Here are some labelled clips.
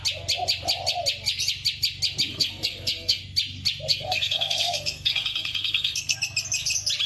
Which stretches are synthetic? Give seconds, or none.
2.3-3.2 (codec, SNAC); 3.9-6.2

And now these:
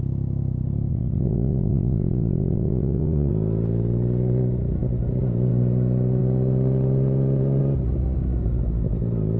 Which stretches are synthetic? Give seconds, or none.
0.9-3.3 (vocoder, Vocos)

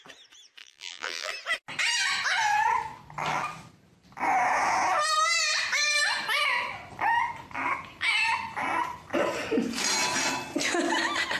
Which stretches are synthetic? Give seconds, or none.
0.6-1.3 (vocoder, BigVGAN v2)

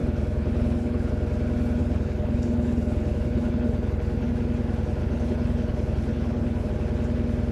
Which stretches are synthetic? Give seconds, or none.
0.0-1.1 (codec, HILCodec); 1.8-4.3; 5.0-6.7

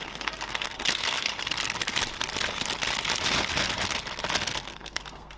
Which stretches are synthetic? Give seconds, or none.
0.0-1.3 (codec, SNAC); 4.5-5.4

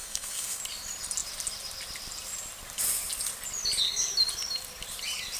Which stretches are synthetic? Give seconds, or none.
0.0-0.6 (codec, SNAC)

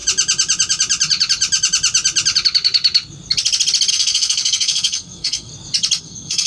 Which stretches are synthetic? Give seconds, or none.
3.9-5.5 (codec, SNAC); 6.0-6.5

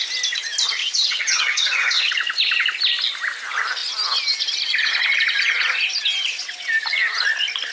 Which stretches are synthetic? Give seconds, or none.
0.8-2.1 (vocoder, HiFi-GAN)